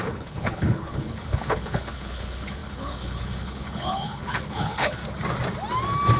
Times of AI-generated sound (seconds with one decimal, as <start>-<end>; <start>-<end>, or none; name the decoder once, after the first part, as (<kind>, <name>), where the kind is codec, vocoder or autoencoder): 0.0-5.0 (codec, HILCodec)